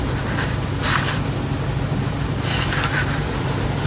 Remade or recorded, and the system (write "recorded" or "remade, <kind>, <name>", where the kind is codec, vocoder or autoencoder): recorded